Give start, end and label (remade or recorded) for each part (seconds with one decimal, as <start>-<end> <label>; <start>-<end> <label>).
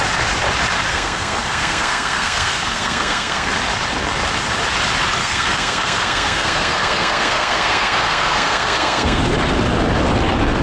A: 0.0-0.9 recorded; 0.9-3.5 remade; 3.5-5.2 recorded; 5.2-9.2 remade; 9.2-10.6 recorded